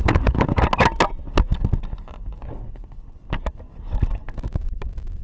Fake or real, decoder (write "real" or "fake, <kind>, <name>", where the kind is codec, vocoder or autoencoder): real